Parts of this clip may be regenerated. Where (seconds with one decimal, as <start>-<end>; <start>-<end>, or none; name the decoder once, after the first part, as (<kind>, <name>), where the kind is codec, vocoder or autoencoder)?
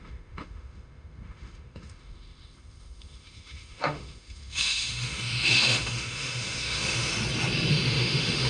0.0-7.1 (autoencoder, DAC-VAE); 7.7-8.5